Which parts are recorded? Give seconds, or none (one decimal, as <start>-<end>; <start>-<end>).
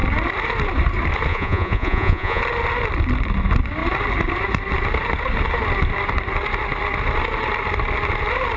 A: 0.0-1.3; 2.4-8.6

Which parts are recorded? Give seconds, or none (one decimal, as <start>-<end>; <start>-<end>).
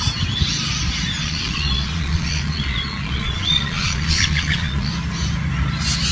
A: 0.0-1.2; 4.9-6.1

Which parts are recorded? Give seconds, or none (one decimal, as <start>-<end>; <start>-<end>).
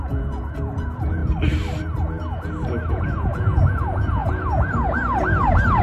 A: 1.2-2.9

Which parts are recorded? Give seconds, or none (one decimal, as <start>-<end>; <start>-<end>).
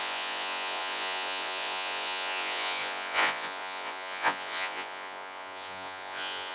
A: none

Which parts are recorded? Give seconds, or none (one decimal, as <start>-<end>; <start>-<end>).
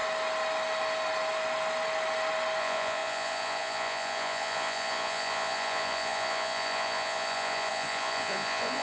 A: 0.0-2.6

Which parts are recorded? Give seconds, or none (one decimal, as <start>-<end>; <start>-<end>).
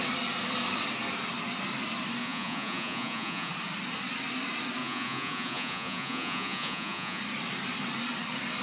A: 0.0-2.2; 3.5-4.8; 7.2-8.6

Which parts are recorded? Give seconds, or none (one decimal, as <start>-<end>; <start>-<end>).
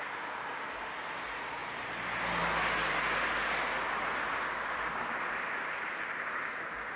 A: 0.0-7.0